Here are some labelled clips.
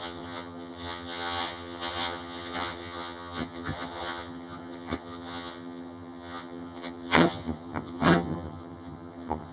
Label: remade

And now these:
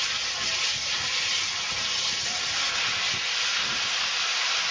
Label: recorded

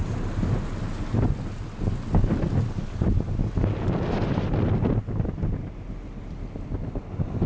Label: recorded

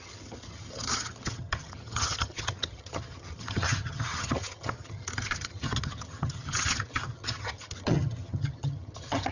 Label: remade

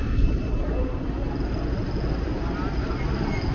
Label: recorded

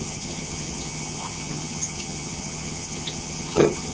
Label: remade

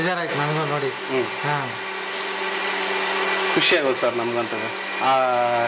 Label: recorded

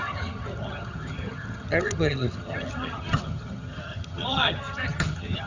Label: remade